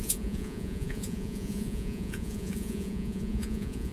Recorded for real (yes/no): no